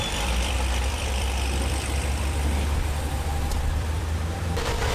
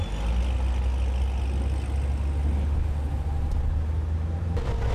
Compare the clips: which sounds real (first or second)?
second